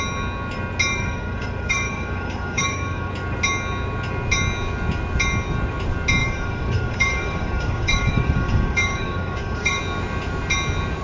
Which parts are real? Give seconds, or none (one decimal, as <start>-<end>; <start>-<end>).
0.0-0.9; 3.1-6.2; 9.8-11.0